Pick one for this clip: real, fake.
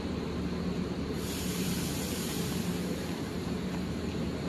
fake